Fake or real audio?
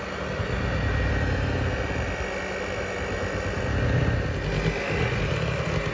real